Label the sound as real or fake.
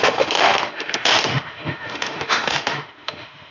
fake